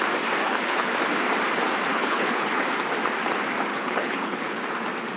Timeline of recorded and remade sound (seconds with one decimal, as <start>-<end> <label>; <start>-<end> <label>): 0.0-0.4 recorded; 0.4-0.9 remade; 0.9-1.9 recorded; 1.9-2.6 remade; 2.6-3.7 recorded; 3.7-4.6 remade; 4.6-5.2 recorded

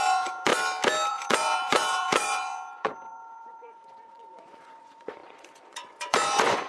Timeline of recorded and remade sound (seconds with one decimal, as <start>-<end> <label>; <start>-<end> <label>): 0.0-0.5 remade; 0.5-1.1 recorded; 1.1-6.7 remade

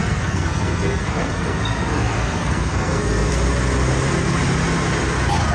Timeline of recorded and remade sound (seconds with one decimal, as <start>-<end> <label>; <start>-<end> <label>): 0.0-3.3 remade; 3.3-5.5 recorded

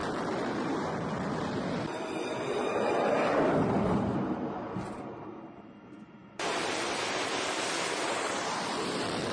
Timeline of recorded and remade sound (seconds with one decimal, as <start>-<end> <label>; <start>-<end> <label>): 0.0-9.3 remade

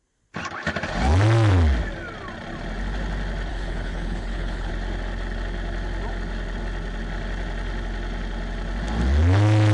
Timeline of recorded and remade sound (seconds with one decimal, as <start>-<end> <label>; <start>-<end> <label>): 0.0-3.5 recorded; 3.5-4.7 remade; 4.7-9.7 recorded

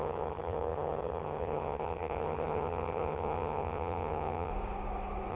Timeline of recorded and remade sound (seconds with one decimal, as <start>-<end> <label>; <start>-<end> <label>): 0.0-4.5 remade; 4.5-5.3 recorded